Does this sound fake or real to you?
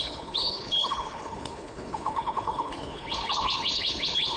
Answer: fake